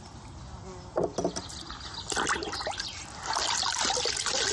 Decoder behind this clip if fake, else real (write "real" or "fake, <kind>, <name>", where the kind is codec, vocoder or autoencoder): real